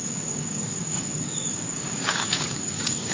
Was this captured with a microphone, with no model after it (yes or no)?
no